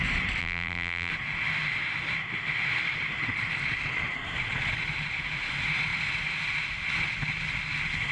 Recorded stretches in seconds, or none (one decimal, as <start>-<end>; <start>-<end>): 0.0-0.4; 1.1-8.1